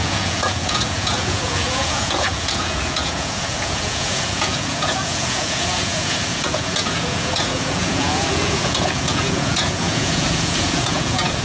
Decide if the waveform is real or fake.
fake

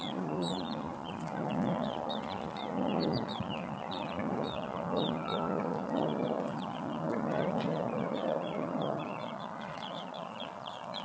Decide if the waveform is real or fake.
fake